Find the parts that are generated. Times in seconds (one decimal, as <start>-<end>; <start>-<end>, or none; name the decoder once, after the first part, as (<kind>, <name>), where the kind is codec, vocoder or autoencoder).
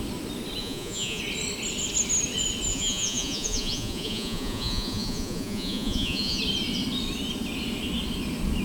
0.6-1.2 (vocoder, Vocos); 2.7-6.4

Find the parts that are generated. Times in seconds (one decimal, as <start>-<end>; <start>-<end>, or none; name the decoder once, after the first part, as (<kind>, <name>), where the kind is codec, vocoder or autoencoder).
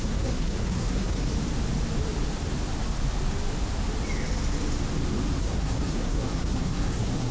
0.0-1.3 (codec, SNAC); 5.4-7.3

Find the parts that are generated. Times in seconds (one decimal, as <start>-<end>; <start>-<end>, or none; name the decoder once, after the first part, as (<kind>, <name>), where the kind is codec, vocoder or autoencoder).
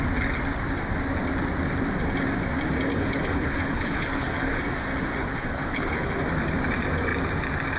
2.9-4.6 (codec, HILCodec); 5.2-6.2